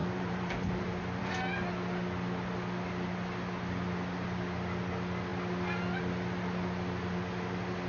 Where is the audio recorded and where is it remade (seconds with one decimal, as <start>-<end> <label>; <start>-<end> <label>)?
0.0-1.3 remade; 1.3-7.9 recorded